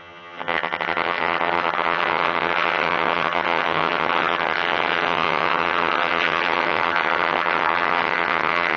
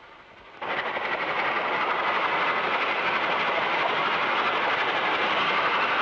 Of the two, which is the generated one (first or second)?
first